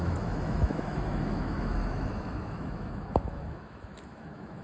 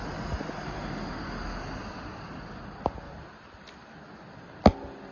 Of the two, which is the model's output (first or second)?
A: first